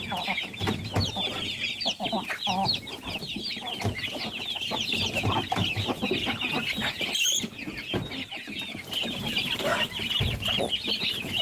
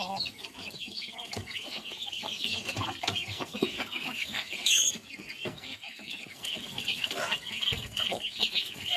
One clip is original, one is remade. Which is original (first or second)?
first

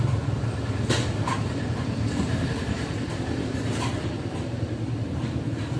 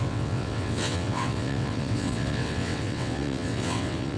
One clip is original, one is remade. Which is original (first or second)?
first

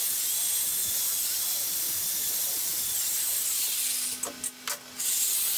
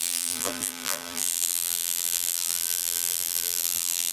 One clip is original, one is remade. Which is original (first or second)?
first